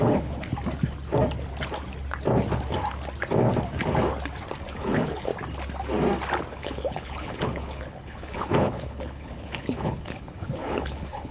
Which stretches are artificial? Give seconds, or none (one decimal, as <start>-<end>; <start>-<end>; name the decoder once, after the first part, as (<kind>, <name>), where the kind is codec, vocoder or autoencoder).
0.0-0.5 (codec, HILCodec); 4.7-5.3; 6.5-11.3